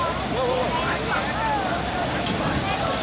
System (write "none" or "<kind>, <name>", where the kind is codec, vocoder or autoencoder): none